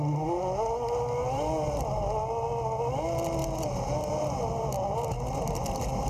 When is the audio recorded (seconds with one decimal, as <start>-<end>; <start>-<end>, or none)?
0.0-3.4; 4.1-6.1